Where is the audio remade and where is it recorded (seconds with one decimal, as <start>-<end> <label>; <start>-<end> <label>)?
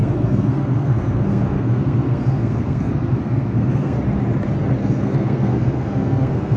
0.0-4.0 remade; 4.0-4.8 recorded; 4.8-6.6 remade